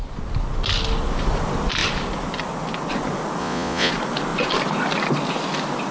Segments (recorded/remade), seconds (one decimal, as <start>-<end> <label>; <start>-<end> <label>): 0.0-3.4 recorded; 3.4-3.9 remade; 3.9-5.9 recorded